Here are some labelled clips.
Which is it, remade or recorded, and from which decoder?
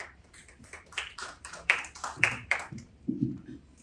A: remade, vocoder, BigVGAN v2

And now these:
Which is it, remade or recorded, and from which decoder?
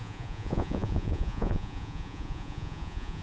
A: remade, vocoder, Vocos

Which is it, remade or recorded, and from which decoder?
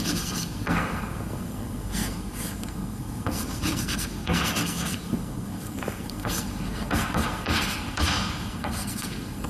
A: remade, codec, SNAC